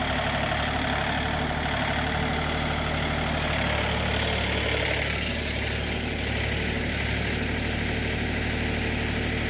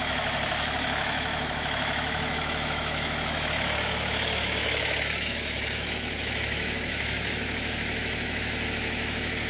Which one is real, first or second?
first